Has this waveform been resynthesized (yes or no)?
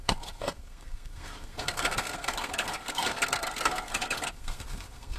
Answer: yes